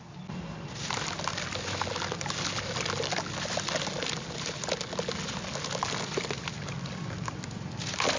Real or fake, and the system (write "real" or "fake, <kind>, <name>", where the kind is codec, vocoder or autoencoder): real